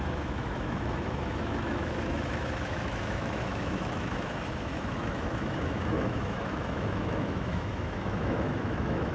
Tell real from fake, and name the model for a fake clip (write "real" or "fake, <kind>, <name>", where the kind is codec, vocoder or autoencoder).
fake, autoencoder, DAC-VAE